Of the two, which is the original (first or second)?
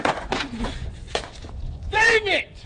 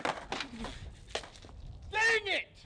second